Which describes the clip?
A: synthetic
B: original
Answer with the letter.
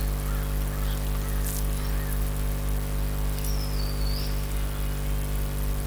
B